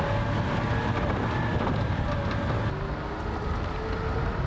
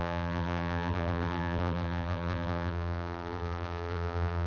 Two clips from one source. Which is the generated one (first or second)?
second